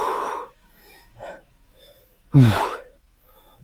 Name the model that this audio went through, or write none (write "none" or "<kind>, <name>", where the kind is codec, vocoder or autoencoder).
autoencoder, DAC-VAE